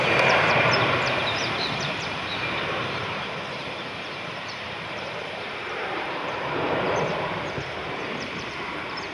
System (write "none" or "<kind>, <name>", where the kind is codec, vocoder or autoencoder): vocoder, BigVGAN v2